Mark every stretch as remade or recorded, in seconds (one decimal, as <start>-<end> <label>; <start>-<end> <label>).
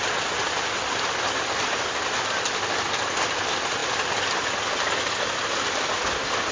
0.0-6.5 recorded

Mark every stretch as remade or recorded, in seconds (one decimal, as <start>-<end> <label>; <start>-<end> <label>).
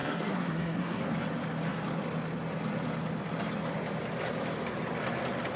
0.0-1.0 remade; 1.0-5.6 recorded